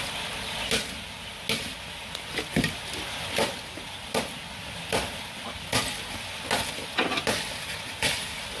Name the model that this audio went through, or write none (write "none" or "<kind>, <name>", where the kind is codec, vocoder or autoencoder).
none